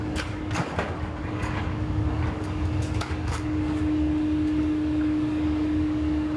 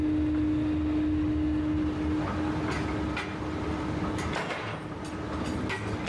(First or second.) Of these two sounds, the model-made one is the first